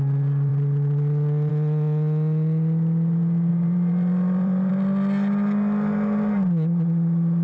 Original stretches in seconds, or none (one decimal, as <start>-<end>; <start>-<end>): 0.0-0.5; 1.5-3.5; 4.7-7.4